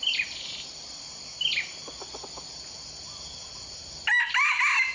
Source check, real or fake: real